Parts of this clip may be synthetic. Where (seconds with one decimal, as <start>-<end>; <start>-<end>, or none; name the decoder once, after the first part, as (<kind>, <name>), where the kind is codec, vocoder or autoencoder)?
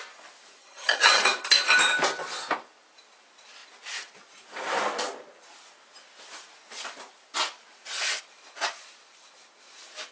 0.6-1.2 (vocoder, HiFi-GAN)